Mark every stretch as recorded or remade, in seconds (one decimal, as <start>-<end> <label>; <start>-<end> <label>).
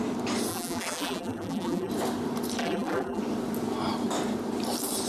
0.0-0.5 recorded; 0.5-1.9 remade; 1.9-2.6 recorded; 2.6-3.2 remade; 3.2-5.1 recorded